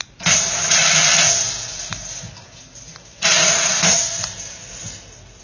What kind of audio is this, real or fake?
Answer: real